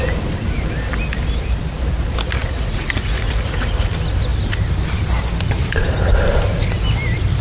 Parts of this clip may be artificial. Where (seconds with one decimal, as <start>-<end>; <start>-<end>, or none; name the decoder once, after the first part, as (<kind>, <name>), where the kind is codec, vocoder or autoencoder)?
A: 2.4-3.9 (vocoder, Vocos)